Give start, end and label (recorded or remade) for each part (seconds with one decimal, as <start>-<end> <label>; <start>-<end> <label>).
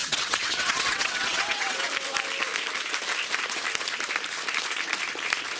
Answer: 0.0-1.9 remade; 1.9-5.6 recorded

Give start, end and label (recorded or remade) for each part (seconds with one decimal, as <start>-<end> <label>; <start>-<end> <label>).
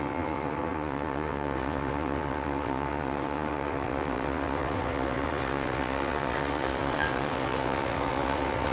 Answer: 0.0-8.7 remade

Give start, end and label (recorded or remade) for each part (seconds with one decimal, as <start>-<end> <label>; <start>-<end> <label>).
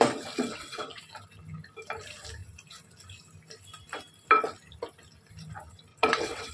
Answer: 0.0-0.5 recorded; 0.5-1.0 remade; 1.0-5.9 recorded; 5.9-6.5 remade